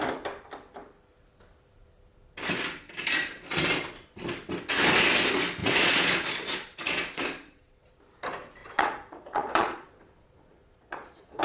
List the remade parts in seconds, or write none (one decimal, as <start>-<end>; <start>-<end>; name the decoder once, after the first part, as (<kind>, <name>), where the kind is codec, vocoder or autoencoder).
5.6-8.0 (vocoder, Vocos); 8.6-11.4